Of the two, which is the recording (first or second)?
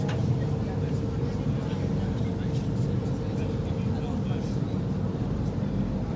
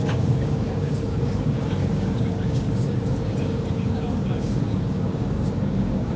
first